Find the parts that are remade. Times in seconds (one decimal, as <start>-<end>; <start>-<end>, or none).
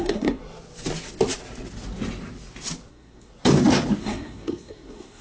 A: 0.0-0.4; 2.9-3.3; 4.0-5.2